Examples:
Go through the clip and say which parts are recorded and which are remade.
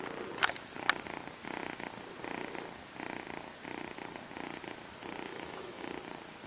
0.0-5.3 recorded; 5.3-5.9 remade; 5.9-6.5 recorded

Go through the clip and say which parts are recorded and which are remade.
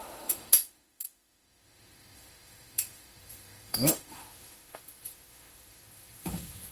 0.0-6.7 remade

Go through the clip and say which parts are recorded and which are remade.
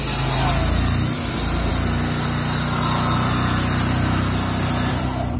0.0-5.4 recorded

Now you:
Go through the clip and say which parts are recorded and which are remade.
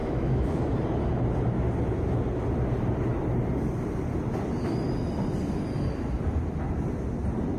0.0-0.6 remade; 0.6-7.6 recorded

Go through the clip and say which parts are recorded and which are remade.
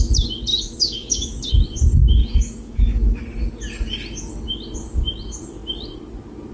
0.0-0.5 recorded; 0.5-1.5 remade; 1.5-2.2 recorded; 2.2-3.2 remade; 3.2-6.5 recorded